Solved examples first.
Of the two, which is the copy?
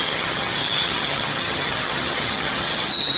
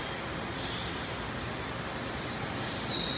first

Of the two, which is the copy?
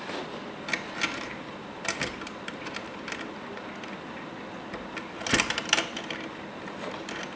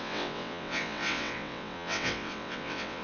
second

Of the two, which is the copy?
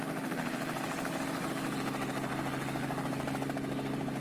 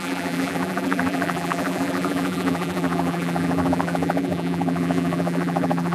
second